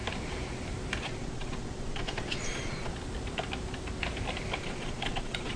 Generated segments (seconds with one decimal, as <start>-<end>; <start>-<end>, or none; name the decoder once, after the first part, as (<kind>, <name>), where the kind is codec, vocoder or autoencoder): 1.0-2.9 (vocoder, Vocos); 4.6-5.6